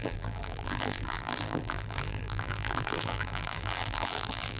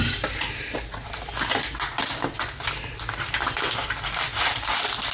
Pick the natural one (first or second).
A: second